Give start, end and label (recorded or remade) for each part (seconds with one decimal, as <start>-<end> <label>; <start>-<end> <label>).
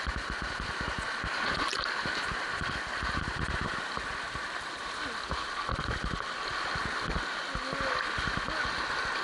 0.0-9.2 recorded